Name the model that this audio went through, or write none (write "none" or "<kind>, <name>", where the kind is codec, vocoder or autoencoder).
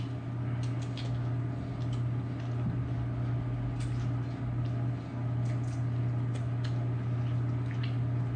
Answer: none